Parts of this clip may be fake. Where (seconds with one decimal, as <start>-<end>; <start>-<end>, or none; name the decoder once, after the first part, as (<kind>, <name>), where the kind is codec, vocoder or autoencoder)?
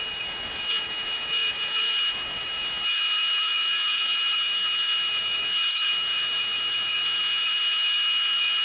0.0-8.6 (autoencoder, DAC-VAE)